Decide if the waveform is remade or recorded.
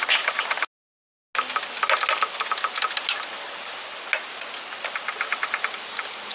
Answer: recorded